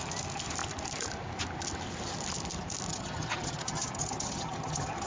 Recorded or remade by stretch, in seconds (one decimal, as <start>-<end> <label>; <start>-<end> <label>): 0.0-2.9 recorded; 2.9-5.1 remade